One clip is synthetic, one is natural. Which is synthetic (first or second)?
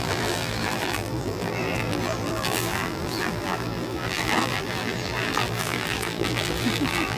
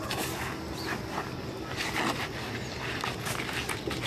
first